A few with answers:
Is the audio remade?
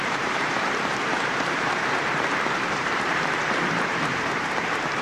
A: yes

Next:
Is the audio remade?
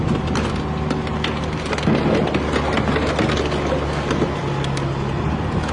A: no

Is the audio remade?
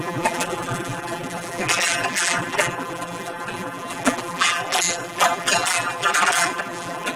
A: yes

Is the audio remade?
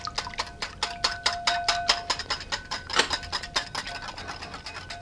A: no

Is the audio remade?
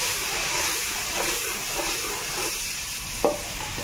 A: yes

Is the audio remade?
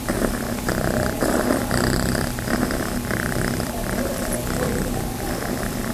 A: yes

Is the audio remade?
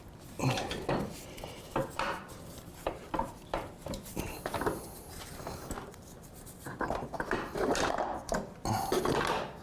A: yes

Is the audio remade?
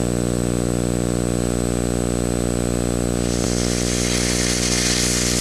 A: no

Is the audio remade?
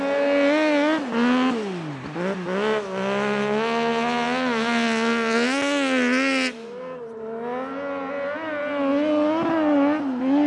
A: no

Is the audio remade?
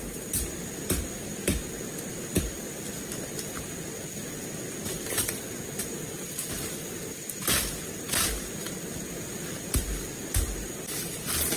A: no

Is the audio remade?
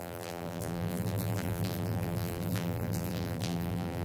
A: yes